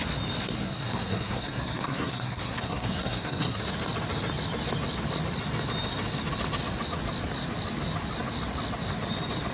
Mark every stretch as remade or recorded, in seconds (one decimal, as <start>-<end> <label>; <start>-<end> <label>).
0.0-0.4 recorded; 0.4-3.6 remade; 3.6-9.5 recorded